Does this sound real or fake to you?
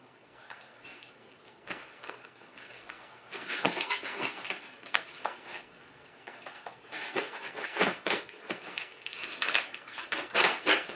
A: fake